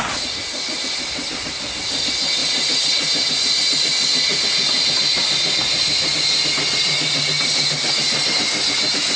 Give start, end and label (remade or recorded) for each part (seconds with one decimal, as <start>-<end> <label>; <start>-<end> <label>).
0.0-2.4 recorded; 2.4-3.6 remade; 3.6-9.2 recorded